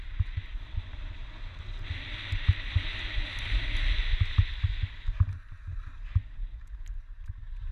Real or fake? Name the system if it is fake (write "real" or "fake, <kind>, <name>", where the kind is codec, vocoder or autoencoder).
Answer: real